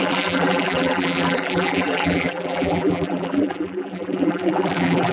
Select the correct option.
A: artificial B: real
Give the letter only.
A